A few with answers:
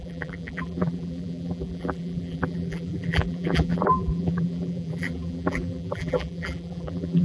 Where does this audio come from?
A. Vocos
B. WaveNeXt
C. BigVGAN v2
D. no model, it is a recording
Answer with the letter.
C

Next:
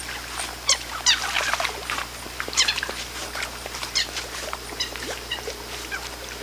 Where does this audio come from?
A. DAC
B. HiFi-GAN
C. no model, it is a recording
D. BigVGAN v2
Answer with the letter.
D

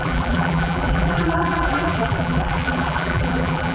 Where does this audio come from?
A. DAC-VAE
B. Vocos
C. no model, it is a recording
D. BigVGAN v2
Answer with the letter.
D